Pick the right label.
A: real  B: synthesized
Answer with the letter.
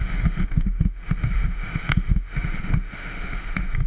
B